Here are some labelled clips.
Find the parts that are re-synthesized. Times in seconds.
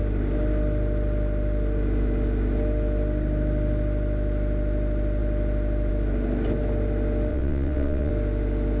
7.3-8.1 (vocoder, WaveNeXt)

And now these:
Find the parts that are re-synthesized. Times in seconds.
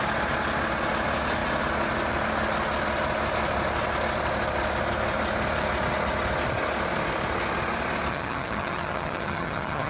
8.1-9.9 (vocoder, HiFi-GAN)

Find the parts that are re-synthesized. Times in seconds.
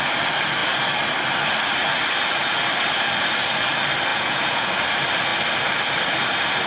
4.1-4.7 (vocoder, Vocos)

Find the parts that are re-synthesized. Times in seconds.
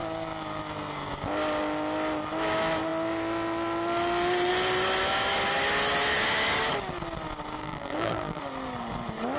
7.6-8.4 (vocoder, BigVGAN v2)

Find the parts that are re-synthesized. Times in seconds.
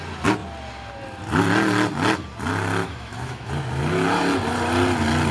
2.8-3.5 (autoencoder, DAC-VAE)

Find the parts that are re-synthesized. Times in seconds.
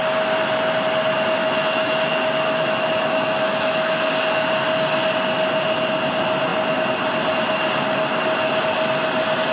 1.4-4.1 (autoencoder, DAC-VAE)